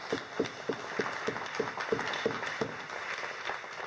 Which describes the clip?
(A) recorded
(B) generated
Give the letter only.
A